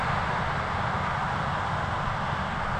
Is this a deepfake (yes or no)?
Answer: no